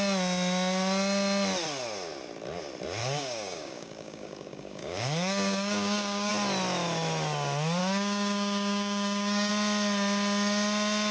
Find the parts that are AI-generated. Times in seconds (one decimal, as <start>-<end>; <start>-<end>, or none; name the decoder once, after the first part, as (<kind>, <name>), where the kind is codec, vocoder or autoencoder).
3.0-6.3 (codec, DAC); 7.8-9.5